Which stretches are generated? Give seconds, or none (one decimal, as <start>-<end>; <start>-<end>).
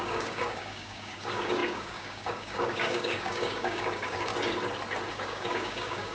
0.0-4.3; 5.1-6.1